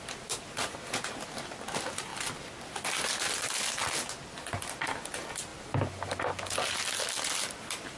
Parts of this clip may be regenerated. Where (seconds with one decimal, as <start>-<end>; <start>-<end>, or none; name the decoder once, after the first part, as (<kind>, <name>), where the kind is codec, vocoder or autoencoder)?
none